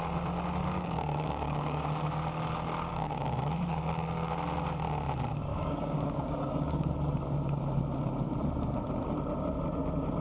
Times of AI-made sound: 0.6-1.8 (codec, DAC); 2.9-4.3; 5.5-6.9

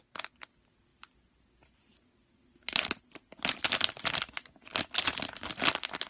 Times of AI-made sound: 0.9-3.6 (vocoder, BigVGAN v2)